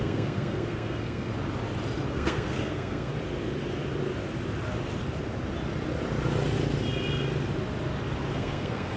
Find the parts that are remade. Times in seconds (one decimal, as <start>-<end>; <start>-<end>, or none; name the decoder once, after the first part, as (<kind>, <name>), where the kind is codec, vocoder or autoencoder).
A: 0.0-1.3 (codec, SNAC); 2.1-3.1; 8.3-9.0